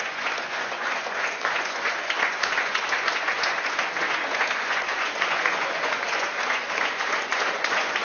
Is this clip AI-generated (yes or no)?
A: yes